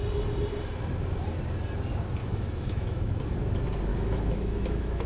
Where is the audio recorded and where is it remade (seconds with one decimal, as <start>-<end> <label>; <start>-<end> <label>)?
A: 0.0-2.2 recorded; 2.2-3.1 remade; 3.1-3.9 recorded; 3.9-5.1 remade